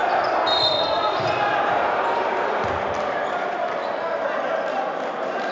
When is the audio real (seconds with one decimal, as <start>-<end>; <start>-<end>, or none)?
0.0-5.5